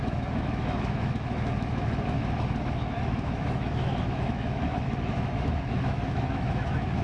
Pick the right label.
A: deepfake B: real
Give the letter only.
A